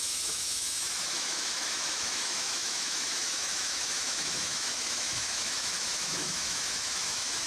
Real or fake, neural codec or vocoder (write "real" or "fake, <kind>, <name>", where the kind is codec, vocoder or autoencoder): fake, autoencoder, DAC-VAE